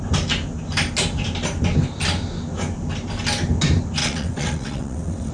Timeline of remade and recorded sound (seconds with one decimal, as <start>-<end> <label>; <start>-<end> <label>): 0.0-4.0 recorded; 4.0-5.3 remade